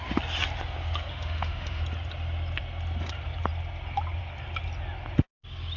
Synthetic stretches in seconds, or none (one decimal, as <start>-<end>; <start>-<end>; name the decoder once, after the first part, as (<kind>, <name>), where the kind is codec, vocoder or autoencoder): 1.1-1.8 (autoencoder, DAC-VAE)